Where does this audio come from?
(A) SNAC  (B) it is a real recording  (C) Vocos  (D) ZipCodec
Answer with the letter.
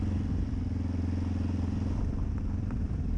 B